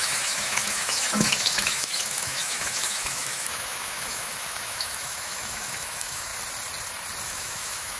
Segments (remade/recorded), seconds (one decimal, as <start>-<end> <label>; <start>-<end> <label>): 0.0-6.3 remade; 6.3-7.3 recorded; 7.3-8.0 remade